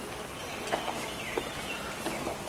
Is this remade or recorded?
recorded